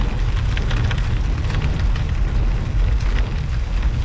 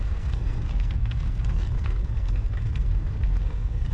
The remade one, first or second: second